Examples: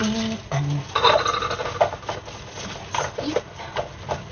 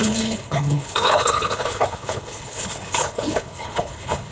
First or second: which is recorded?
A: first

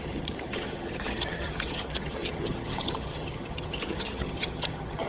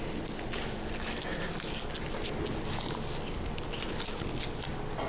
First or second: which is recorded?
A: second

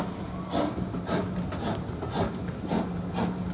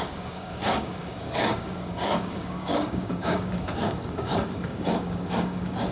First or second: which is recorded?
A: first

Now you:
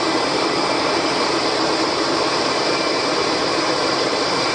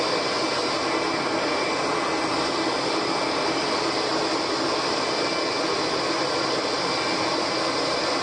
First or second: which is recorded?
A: second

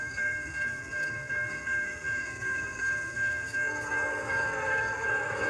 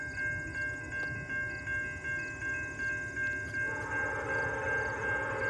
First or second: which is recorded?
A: second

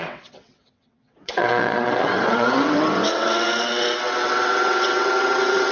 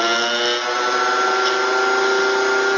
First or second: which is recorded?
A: second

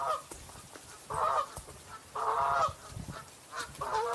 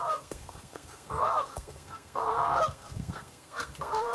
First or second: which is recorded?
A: first